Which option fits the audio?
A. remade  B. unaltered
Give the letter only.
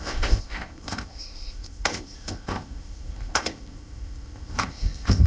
A